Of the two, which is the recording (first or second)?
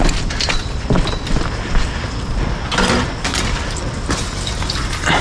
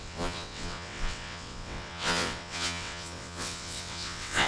first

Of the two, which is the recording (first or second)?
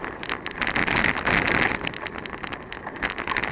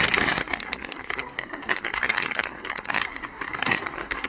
first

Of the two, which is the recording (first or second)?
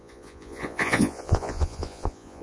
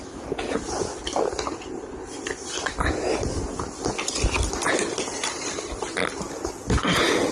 second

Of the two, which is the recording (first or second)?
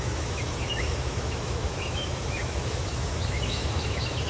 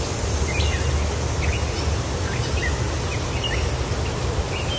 second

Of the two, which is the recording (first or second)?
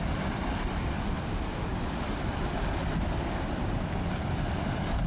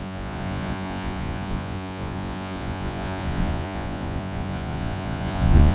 first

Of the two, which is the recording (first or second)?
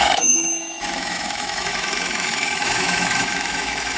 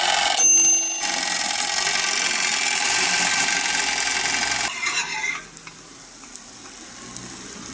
second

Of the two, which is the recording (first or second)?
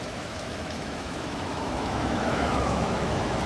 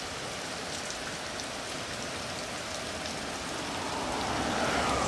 second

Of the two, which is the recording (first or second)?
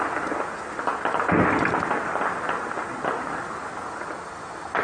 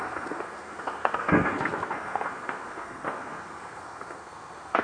first